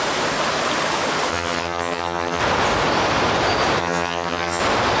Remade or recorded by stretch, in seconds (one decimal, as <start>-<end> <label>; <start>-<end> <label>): 0.0-1.3 recorded; 1.3-2.4 remade; 2.4-3.8 recorded; 3.8-4.6 remade; 4.6-5.0 recorded